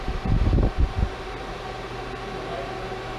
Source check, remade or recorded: recorded